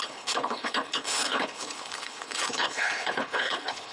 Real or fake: fake